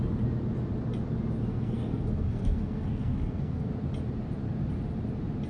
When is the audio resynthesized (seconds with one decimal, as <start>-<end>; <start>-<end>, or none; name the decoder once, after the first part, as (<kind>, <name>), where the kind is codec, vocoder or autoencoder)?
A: 1.5-3.7 (codec, SNAC)